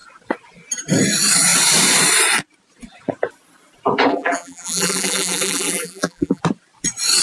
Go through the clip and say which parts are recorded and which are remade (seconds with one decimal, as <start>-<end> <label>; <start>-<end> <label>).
0.0-4.1 recorded; 4.1-6.4 remade; 6.4-7.2 recorded